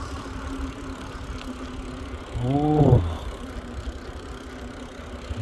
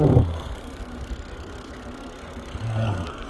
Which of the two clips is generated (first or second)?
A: second